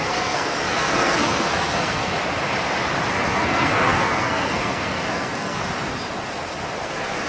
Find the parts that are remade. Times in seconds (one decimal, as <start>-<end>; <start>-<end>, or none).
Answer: 0.0-2.2; 3.1-5.6; 6.8-7.3